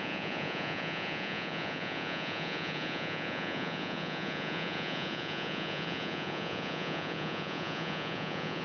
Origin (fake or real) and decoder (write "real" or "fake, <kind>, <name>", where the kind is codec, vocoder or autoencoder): fake, vocoder, Vocos